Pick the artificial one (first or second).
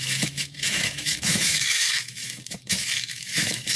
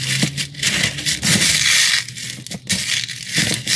first